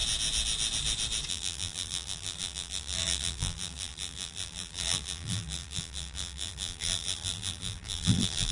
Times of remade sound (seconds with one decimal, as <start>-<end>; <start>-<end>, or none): 1.3-8.5